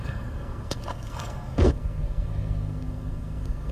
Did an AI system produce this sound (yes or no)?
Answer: yes